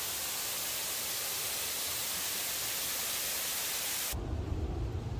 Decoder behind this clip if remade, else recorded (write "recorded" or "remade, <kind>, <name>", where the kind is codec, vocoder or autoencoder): recorded